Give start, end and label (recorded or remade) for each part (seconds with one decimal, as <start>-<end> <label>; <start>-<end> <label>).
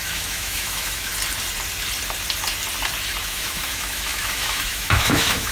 0.0-1.1 remade; 1.1-3.2 recorded; 3.2-5.5 remade